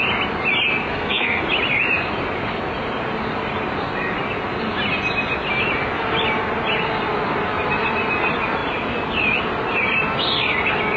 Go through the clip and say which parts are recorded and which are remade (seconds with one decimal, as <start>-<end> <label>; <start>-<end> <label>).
0.0-0.9 recorded; 0.9-1.4 remade; 1.4-11.0 recorded